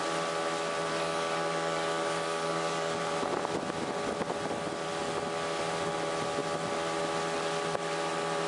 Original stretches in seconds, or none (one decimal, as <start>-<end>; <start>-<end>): 0.0-0.9; 3.0-8.5